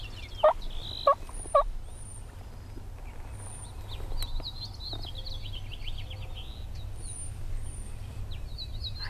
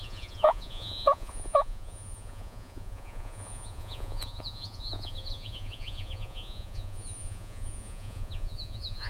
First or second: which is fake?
second